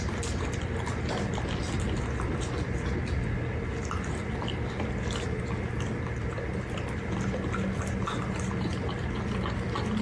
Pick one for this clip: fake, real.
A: real